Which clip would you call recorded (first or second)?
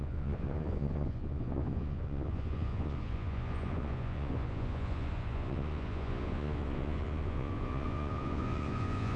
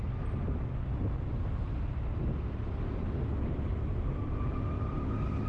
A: second